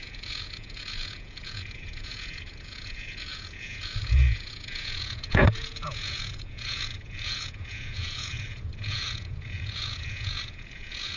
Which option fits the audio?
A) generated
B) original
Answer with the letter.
A